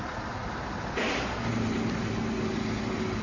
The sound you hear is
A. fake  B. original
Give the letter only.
B